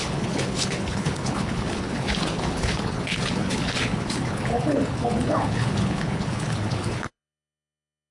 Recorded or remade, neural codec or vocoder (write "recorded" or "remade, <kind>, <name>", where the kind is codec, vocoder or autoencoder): remade, codec, HILCodec